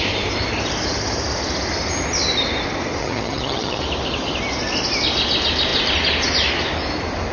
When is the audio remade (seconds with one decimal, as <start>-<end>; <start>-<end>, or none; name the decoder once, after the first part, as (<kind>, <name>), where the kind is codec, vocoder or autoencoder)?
3.0-3.8 (vocoder, HiFi-GAN)